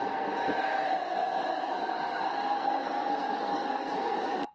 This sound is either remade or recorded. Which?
remade